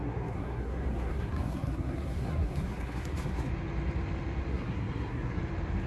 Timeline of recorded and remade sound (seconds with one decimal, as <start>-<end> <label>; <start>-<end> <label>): 0.0-3.5 remade; 3.5-4.5 recorded; 4.5-5.4 remade; 5.4-5.9 recorded